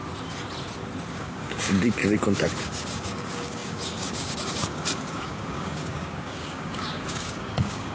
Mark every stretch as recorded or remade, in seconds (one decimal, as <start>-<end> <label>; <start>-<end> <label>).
0.0-1.1 recorded; 1.1-2.0 remade; 2.0-2.6 recorded; 2.6-7.9 remade